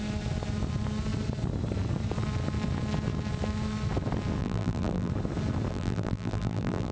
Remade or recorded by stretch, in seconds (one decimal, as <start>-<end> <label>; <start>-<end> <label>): 0.0-4.4 recorded; 4.4-5.1 remade; 5.1-5.7 recorded; 5.7-6.9 remade